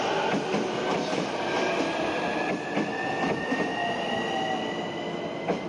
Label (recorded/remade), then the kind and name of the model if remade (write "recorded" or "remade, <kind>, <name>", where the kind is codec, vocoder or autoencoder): recorded